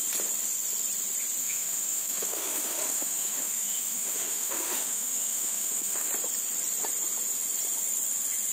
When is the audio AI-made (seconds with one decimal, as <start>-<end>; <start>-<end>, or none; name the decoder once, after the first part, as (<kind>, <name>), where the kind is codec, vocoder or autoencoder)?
1.4-6.1 (autoencoder, DAC-VAE)

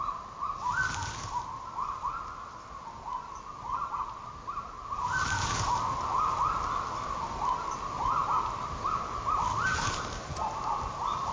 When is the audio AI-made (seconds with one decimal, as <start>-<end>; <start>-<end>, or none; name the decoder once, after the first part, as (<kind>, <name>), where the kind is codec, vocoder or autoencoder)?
none